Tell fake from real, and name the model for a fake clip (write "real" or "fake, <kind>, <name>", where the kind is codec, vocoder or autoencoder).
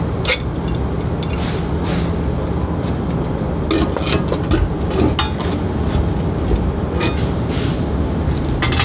real